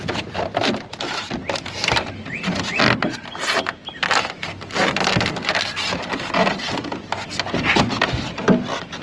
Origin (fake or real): real